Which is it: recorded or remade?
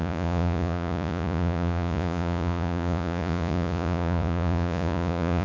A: remade